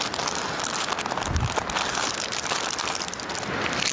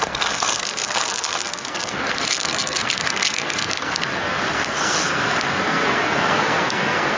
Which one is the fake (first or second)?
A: second